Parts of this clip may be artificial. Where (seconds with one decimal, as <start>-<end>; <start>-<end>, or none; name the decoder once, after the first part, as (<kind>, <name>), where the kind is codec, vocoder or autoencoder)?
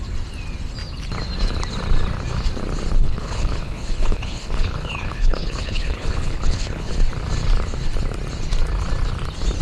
3.0-6.9 (codec, HILCodec)